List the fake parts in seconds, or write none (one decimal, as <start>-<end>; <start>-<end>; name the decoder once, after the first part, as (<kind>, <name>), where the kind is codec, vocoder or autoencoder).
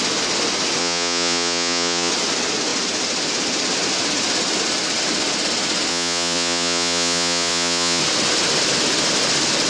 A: 0.8-2.1 (vocoder, Vocos); 5.9-8.0